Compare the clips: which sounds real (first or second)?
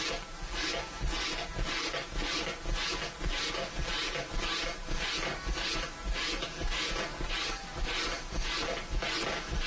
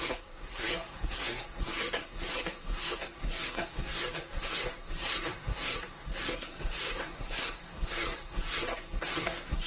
first